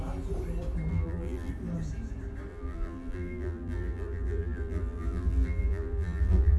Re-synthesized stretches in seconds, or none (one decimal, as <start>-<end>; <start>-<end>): 0.9-1.5; 2.5-6.6